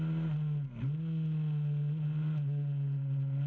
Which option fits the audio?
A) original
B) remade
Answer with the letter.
A